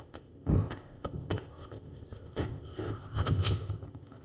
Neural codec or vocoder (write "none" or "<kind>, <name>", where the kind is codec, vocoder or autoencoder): codec, ZipCodec